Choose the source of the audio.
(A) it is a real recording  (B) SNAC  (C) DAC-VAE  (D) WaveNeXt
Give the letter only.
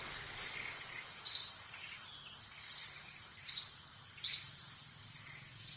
A